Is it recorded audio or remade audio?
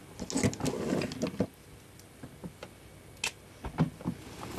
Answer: recorded